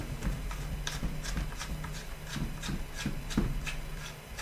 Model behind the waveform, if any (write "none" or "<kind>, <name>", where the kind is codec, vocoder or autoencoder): vocoder, BigVGAN v2